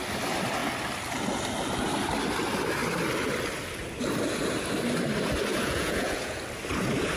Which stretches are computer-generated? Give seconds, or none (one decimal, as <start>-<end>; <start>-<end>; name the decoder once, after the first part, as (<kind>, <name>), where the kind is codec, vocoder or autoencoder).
5.5-6.4 (vocoder, Vocos)